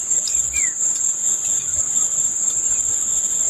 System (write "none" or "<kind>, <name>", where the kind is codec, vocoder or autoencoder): none